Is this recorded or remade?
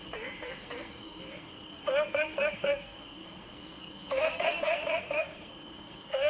remade